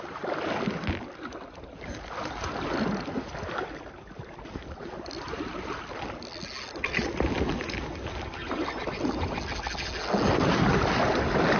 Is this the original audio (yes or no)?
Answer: yes